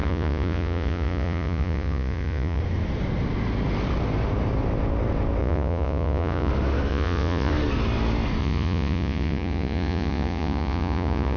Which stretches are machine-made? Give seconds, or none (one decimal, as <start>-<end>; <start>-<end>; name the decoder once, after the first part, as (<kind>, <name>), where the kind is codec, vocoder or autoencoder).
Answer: 0.0-2.6 (vocoder, Vocos); 5.4-6.5; 6.9-7.5; 8.4-11.4